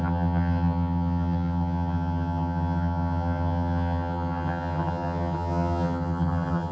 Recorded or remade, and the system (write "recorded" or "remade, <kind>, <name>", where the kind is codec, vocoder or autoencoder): remade, vocoder, HiFi-GAN